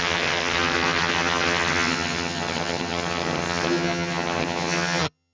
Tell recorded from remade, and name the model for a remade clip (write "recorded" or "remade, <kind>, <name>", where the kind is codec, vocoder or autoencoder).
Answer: remade, vocoder, HiFi-GAN